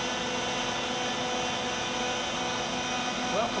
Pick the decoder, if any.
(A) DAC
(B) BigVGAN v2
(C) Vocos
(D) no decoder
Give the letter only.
D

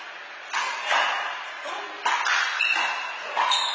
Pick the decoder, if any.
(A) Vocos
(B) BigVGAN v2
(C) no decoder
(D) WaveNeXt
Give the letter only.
C